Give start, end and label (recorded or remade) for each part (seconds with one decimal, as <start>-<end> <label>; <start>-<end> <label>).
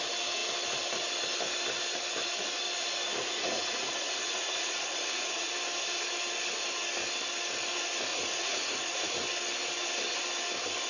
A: 0.0-3.2 recorded; 3.2-5.5 remade; 5.5-8.1 recorded; 8.1-9.1 remade; 9.1-10.9 recorded